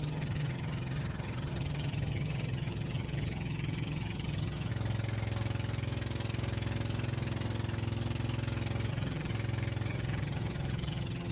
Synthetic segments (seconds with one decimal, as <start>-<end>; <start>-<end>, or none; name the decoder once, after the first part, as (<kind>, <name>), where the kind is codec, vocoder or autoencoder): 0.0-4.7 (vocoder, HiFi-GAN); 8.9-9.3; 9.9-11.3